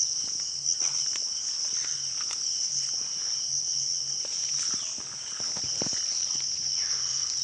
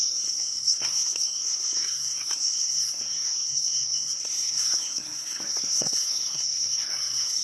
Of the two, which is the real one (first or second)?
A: first